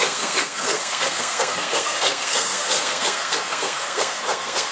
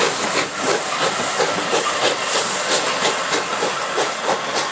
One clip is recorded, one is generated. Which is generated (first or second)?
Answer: first